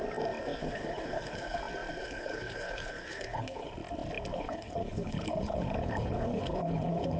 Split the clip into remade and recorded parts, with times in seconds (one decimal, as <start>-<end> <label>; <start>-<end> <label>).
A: 0.0-0.6 recorded; 0.6-1.6 remade; 1.6-2.0 recorded; 2.0-3.7 remade; 3.7-4.3 recorded; 4.3-7.2 remade